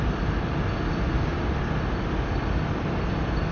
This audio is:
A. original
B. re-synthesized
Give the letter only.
A